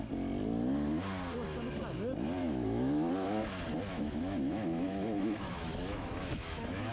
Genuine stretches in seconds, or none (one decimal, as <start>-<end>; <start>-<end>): 0.0-2.4; 3.1-3.9